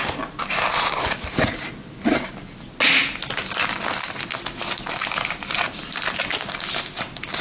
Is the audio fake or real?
real